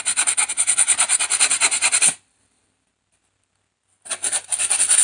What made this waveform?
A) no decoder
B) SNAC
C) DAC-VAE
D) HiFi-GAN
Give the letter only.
A